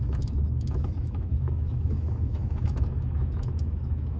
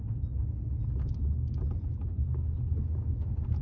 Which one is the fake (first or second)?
first